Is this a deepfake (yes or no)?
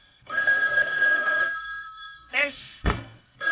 yes